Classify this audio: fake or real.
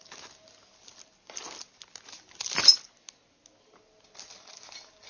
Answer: real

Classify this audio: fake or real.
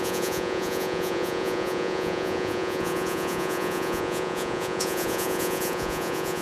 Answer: fake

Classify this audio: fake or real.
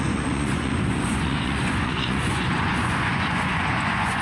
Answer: fake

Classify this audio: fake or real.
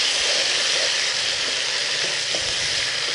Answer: real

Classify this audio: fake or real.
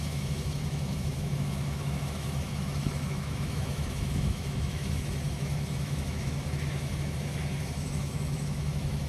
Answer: fake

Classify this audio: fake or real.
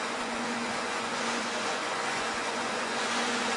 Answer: fake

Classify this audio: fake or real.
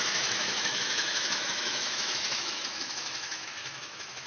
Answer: fake